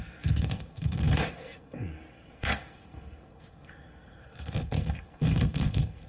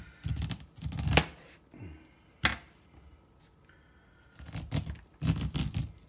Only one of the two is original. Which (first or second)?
second